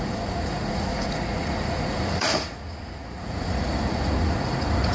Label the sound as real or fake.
fake